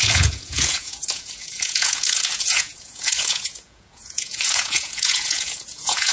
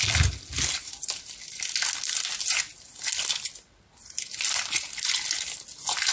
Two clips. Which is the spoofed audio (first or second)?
first